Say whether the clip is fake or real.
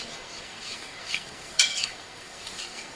fake